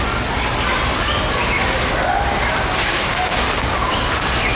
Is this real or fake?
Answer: real